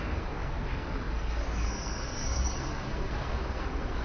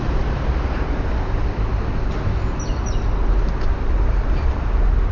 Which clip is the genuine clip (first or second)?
second